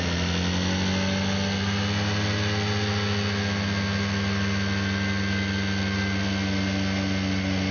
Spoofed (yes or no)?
no